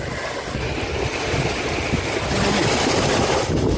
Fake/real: real